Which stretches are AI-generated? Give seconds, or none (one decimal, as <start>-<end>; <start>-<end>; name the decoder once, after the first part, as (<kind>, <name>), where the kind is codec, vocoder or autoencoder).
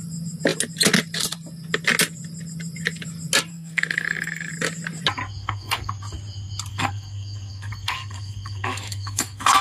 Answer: 3.5-4.5 (codec, SNAC); 5.4-5.9; 6.7-9.6